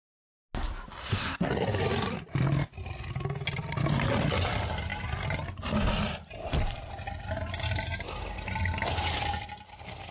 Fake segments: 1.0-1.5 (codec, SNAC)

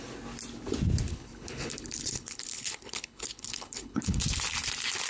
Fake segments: 1.1-4.2 (codec, HILCodec)

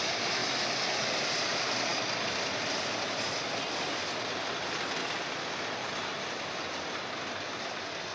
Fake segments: none

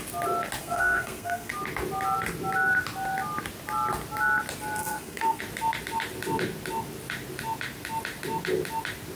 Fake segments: 0.6-1.5 (codec, SNAC); 4.8-5.4